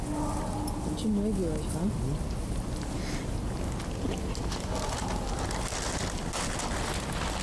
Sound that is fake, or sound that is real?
real